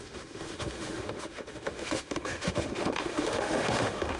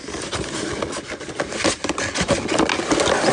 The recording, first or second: second